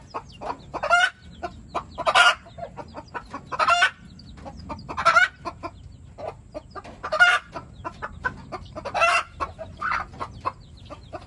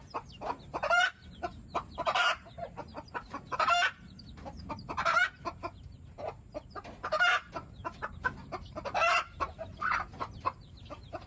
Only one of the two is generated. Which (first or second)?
second